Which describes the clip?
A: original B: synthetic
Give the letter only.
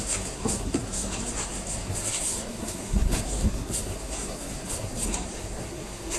B